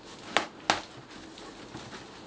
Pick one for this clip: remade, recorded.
recorded